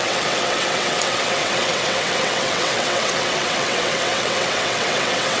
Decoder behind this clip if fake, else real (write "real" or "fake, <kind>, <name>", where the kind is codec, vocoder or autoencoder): fake, vocoder, WaveNeXt